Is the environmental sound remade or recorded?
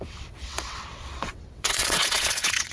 remade